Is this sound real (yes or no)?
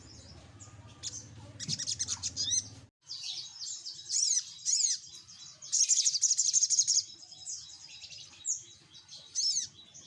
yes